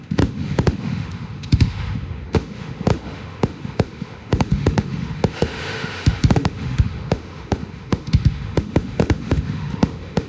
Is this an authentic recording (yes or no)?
no